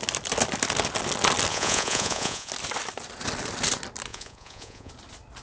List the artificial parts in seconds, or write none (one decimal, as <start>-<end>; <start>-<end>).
1.5-2.5; 4.1-4.9